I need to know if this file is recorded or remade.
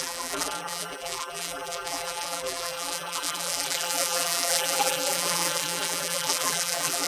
remade